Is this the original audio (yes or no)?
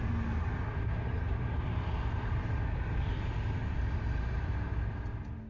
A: yes